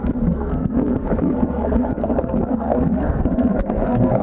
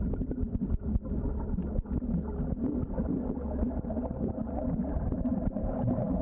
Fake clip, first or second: first